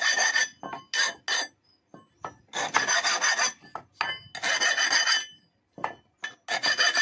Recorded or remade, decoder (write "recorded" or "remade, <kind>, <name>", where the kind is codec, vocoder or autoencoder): recorded